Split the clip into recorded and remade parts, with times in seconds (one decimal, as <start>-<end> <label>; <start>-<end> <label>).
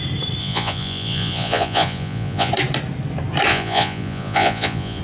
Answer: 0.0-0.4 recorded; 0.4-2.5 remade; 2.5-3.5 recorded; 3.5-5.0 remade